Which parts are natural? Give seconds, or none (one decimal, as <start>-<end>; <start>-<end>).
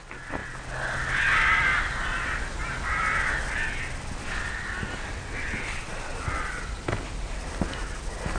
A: 0.0-5.4; 6.1-8.4